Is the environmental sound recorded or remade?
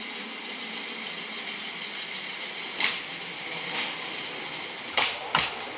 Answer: recorded